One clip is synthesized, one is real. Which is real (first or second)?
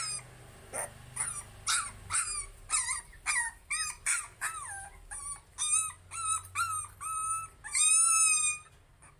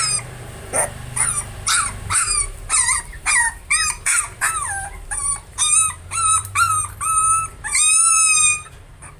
first